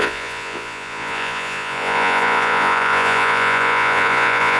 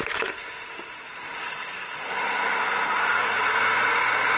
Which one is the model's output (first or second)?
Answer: first